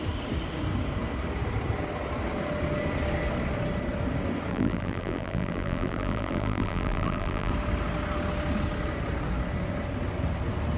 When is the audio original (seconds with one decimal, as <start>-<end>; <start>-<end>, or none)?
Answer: 0.0-4.5; 7.5-10.8